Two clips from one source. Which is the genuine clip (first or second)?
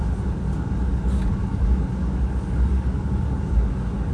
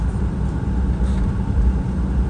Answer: second